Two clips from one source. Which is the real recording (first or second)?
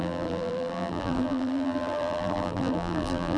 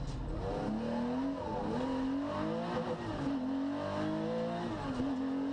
second